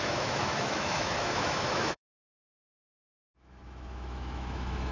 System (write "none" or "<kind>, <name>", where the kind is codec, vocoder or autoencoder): autoencoder, DAC-VAE